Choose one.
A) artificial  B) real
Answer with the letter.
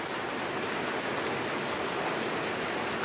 B